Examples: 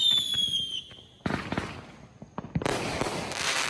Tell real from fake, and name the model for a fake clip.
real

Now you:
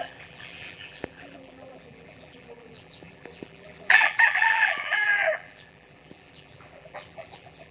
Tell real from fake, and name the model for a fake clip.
fake, vocoder, BigVGAN v2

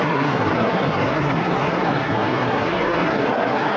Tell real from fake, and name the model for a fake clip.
fake, codec, SNAC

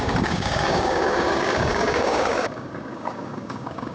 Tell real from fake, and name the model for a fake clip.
fake, codec, DAC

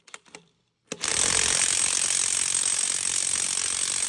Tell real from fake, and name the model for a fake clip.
real